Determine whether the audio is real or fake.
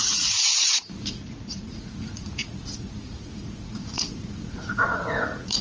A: fake